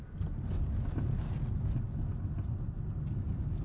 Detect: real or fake real